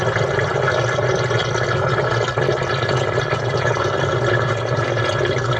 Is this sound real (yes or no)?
yes